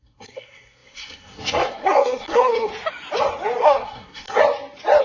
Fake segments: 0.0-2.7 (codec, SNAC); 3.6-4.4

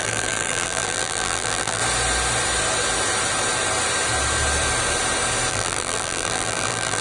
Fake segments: 0.0-1.8 (vocoder, BigVGAN v2); 5.5-7.0

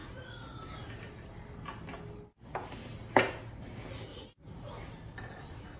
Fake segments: 0.0-0.6 (vocoder, Vocos); 4.1-4.7

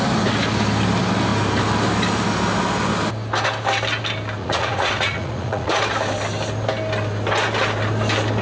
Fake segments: 4.4-5.8 (vocoder, Vocos)